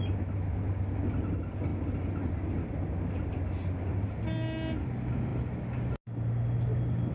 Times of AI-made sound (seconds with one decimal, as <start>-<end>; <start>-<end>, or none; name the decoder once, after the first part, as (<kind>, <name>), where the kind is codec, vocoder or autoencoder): none